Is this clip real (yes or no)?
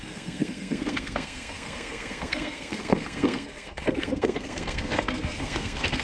no